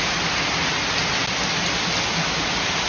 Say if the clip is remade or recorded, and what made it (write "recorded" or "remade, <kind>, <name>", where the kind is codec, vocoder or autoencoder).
recorded